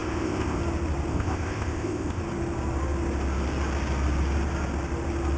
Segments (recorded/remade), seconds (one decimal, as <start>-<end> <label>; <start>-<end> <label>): 0.0-0.6 remade; 0.6-1.1 recorded; 1.1-2.2 remade; 2.2-5.4 recorded